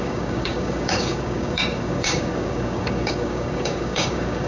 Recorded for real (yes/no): no